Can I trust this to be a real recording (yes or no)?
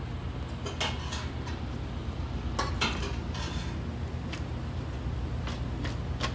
yes